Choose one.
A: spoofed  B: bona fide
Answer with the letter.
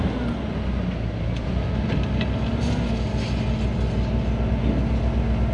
B